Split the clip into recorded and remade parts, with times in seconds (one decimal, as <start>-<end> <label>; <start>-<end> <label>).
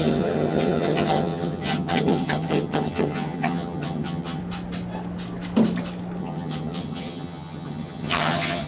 0.0-4.4 remade; 4.4-6.2 recorded; 6.2-8.7 remade